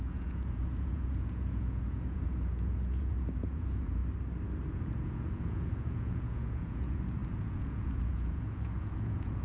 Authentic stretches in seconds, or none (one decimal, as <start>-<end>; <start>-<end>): 4.0-4.7